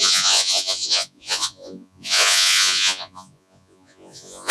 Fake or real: fake